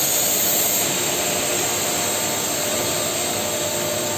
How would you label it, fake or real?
real